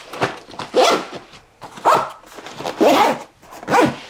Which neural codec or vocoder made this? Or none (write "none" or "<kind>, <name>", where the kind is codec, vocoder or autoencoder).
none